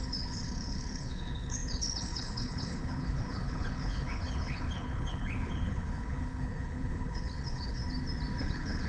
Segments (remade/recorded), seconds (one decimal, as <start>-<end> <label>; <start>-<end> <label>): 0.0-7.8 remade; 7.8-8.4 recorded; 8.4-8.9 remade